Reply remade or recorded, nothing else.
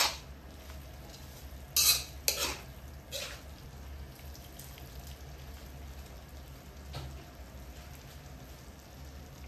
recorded